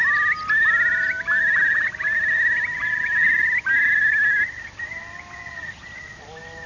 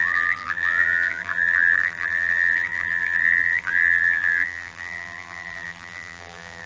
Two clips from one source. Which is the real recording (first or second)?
first